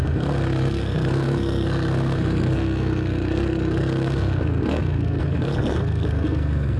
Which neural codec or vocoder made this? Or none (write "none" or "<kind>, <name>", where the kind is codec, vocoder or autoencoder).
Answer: codec, SNAC